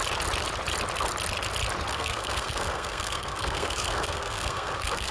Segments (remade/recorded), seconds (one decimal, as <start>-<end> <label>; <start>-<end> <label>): 0.0-1.9 recorded; 1.9-5.1 remade

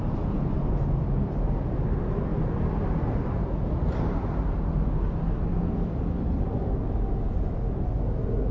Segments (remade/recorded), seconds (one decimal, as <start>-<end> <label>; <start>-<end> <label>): 0.0-8.5 recorded

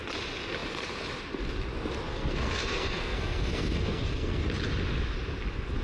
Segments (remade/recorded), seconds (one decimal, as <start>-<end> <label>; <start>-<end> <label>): 0.0-2.1 recorded; 2.1-4.4 remade; 4.4-5.8 recorded

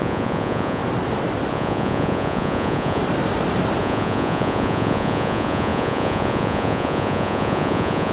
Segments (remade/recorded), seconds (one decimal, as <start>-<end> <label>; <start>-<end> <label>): 0.0-0.8 remade; 0.8-1.5 recorded; 1.5-3.0 remade; 3.0-3.8 recorded; 3.8-8.1 remade

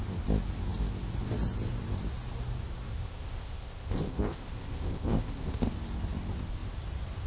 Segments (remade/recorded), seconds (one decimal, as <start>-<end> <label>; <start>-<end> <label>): 0.0-2.9 recorded; 2.9-5.7 remade; 5.7-7.3 recorded

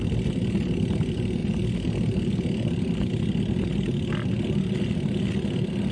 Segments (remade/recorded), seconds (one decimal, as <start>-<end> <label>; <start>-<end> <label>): 0.0-5.9 recorded

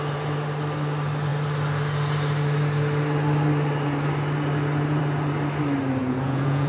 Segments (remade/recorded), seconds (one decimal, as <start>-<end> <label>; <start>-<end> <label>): 0.0-6.0 recorded; 6.0-6.7 remade